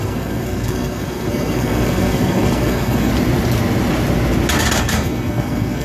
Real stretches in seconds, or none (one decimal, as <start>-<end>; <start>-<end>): 3.1-4.8